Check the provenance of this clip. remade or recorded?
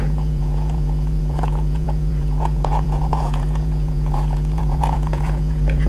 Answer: remade